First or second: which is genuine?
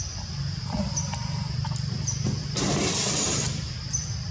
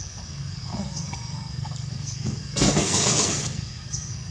first